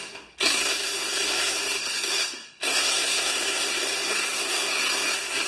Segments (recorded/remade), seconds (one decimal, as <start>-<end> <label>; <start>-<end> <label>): 0.0-5.5 remade